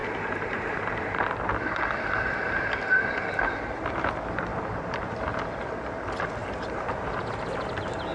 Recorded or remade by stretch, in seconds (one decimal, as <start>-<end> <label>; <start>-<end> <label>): 0.0-1.5 remade; 1.5-4.5 recorded; 4.5-5.2 remade; 5.2-6.4 recorded; 6.4-7.3 remade; 7.3-8.1 recorded